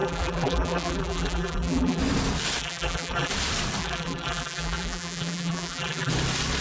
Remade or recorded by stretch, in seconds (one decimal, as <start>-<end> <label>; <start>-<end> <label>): 0.0-2.0 remade; 2.0-2.6 recorded; 2.6-3.3 remade; 3.3-3.8 recorded; 3.8-6.1 remade; 6.1-6.6 recorded